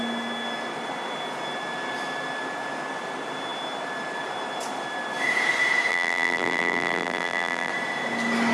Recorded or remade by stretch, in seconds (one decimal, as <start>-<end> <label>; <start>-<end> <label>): 0.0-5.9 recorded; 5.9-7.7 remade; 7.7-8.5 recorded